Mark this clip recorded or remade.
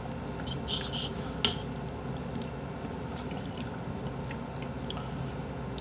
recorded